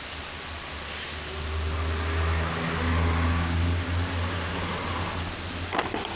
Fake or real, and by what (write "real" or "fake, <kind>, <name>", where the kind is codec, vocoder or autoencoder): real